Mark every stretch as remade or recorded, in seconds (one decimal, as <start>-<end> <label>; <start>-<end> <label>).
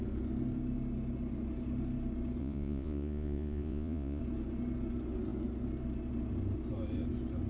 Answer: 0.0-2.4 recorded; 2.4-4.2 remade; 4.2-7.5 recorded